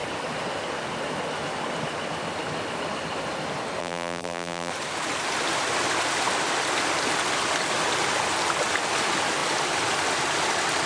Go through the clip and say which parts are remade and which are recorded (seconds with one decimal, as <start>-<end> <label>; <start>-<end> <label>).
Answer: 0.0-3.8 recorded; 3.8-4.7 remade; 4.7-10.9 recorded